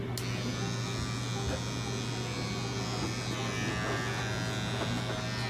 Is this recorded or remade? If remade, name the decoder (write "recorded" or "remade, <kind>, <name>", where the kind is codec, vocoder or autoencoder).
recorded